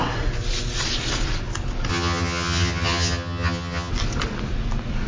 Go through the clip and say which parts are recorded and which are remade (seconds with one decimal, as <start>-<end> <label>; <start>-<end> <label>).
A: 0.0-1.9 recorded; 1.9-3.9 remade; 3.9-5.1 recorded